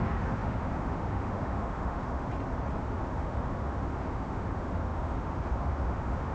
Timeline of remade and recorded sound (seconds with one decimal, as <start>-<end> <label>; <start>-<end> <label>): 0.0-2.3 remade; 2.3-2.8 recorded; 2.8-6.3 remade